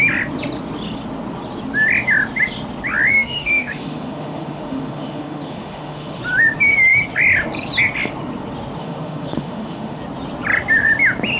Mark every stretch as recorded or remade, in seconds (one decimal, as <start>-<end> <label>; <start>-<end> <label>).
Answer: 0.0-3.1 recorded; 3.1-6.2 remade; 6.2-8.8 recorded; 8.8-10.0 remade; 10.0-11.4 recorded